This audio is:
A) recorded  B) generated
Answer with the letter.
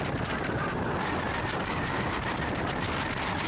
A